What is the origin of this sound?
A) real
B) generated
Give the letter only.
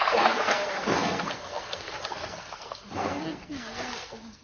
B